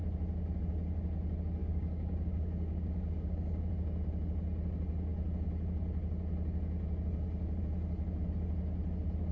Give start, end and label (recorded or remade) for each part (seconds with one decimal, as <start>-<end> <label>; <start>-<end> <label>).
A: 0.0-1.6 recorded; 1.6-3.7 remade; 3.7-9.3 recorded